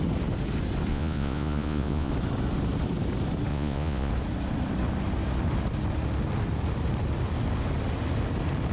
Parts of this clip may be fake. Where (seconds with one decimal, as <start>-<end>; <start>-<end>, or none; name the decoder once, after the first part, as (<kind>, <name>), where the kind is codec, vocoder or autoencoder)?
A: 0.9-2.1 (vocoder, Vocos); 3.5-4.1